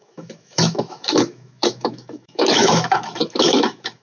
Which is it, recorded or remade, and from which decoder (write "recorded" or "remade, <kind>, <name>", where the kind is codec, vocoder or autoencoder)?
remade, autoencoder, DAC-VAE